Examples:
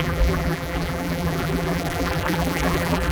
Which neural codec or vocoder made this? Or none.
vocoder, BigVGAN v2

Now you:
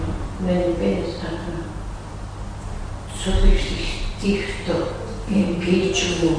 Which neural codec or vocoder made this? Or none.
none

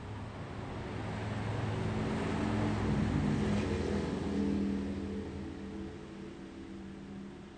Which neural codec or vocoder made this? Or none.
none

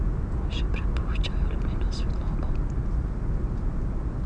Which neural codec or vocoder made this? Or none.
none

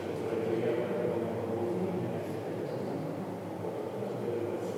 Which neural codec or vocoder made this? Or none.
none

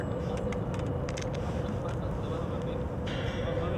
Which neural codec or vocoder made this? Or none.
none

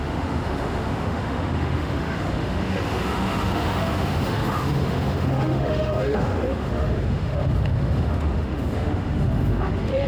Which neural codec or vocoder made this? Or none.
autoencoder, DAC-VAE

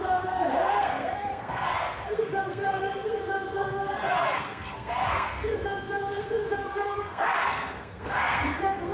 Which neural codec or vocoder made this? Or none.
codec, SNAC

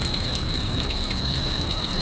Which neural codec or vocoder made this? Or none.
codec, SNAC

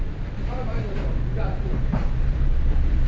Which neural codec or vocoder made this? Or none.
vocoder, BigVGAN v2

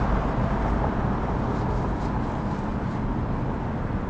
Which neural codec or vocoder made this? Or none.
none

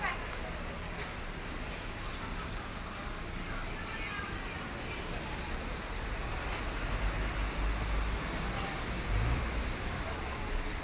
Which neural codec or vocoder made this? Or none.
none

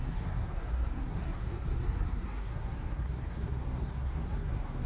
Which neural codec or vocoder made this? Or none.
codec, SNAC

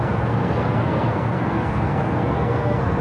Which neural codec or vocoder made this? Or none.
codec, SNAC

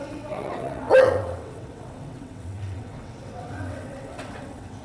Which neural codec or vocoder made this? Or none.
vocoder, WaveNeXt